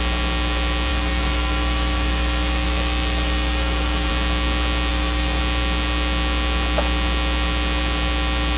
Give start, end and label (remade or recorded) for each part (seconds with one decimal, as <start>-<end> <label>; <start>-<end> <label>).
0.0-0.9 recorded; 0.9-4.1 remade; 4.1-4.9 recorded; 4.9-5.4 remade; 5.4-8.6 recorded